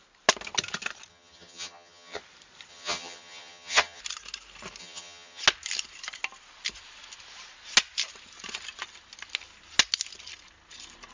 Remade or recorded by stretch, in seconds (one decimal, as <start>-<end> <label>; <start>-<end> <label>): 0.0-1.1 recorded; 1.1-2.2 remade; 2.2-2.7 recorded; 2.7-4.0 remade; 4.0-4.8 recorded; 4.8-5.4 remade; 5.4-11.1 recorded